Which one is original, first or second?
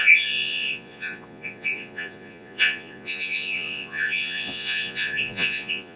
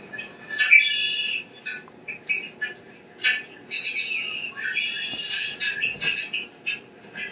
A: second